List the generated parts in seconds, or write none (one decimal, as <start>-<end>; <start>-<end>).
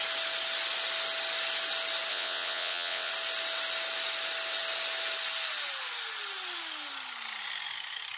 2.1-3.1